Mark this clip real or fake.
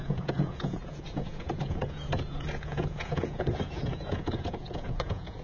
fake